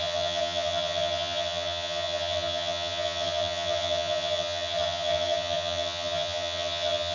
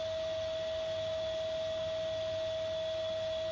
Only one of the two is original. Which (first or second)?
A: second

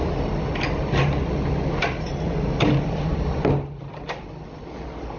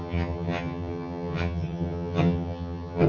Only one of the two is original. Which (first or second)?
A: first